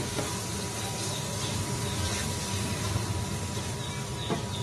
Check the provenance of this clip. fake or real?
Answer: real